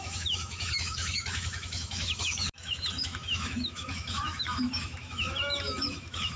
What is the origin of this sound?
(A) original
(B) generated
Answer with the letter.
B